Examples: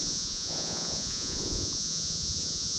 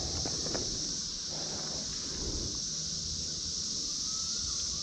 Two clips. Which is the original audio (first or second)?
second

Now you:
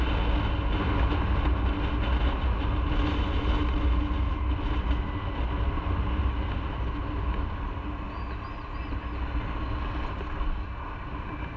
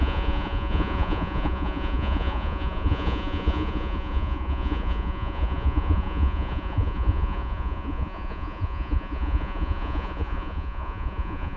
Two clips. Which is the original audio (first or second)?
first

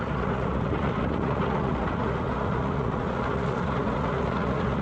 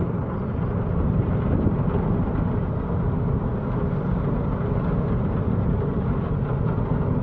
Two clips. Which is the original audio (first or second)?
second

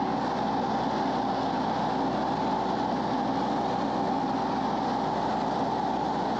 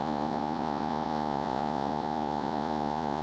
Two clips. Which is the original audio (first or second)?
first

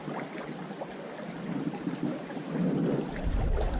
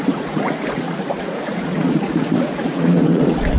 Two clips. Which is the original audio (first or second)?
first